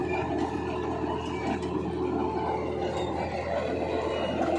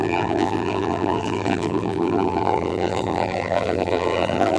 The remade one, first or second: second